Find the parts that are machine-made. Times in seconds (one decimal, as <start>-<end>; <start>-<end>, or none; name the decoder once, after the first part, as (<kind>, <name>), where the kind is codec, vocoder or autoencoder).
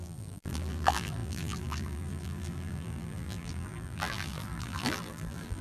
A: 0.0-5.6 (vocoder, BigVGAN v2)